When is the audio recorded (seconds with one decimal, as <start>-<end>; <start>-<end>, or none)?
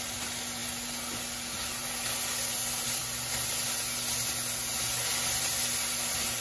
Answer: 0.0-6.4